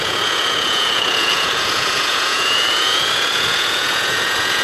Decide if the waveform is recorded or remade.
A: remade